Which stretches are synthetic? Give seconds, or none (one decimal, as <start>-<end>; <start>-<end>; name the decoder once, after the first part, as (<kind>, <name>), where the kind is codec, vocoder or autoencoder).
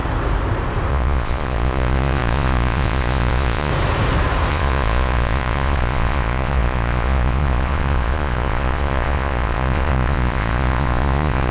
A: 0.9-3.7 (vocoder, Vocos); 4.5-11.5